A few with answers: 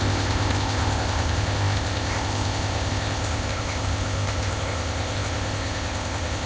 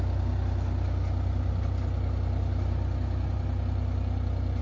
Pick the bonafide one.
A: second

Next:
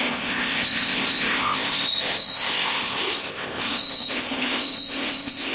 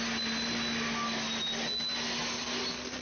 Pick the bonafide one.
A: second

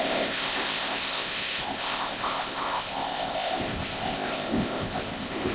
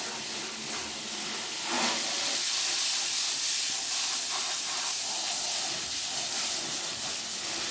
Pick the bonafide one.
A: second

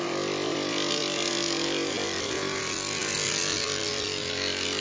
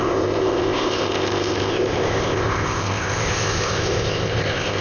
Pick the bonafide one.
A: first